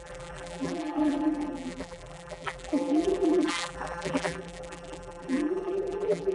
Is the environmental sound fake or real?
fake